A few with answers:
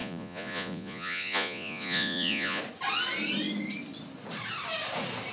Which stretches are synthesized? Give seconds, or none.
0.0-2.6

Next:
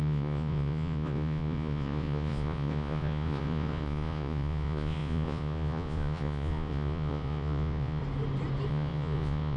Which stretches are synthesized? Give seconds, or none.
0.0-8.0; 8.7-9.6